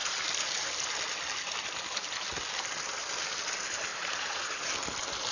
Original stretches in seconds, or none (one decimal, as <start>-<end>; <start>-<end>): 0.0-3.9; 4.7-5.3